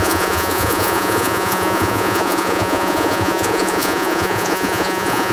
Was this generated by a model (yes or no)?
yes